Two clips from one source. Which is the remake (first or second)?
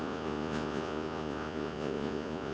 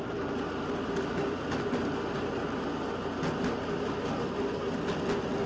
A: first